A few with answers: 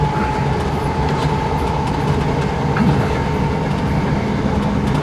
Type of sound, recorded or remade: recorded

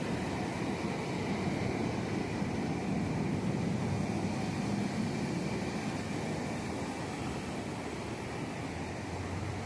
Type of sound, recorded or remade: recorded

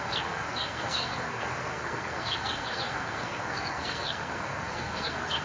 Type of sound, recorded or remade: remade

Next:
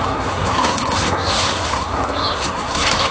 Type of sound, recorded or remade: remade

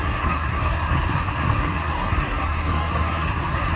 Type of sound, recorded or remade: remade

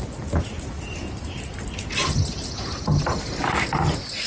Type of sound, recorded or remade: recorded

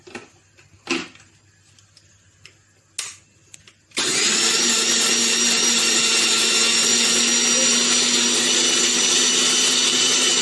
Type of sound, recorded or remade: recorded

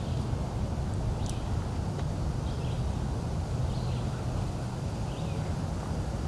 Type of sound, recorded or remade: recorded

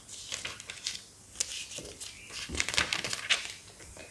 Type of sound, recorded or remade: recorded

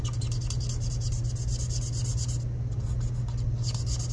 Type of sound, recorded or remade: recorded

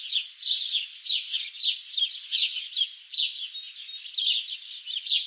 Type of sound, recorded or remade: recorded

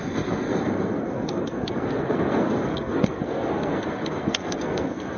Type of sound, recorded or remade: remade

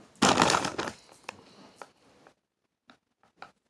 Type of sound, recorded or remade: recorded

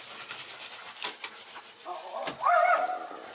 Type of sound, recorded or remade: recorded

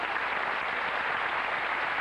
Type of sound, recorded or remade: recorded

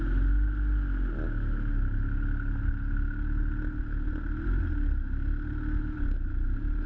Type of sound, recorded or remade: recorded